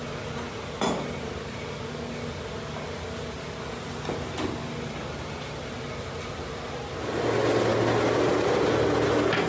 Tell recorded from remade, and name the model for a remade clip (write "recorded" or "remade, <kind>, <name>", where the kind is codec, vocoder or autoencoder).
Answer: recorded